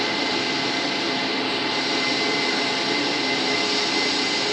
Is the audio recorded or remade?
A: recorded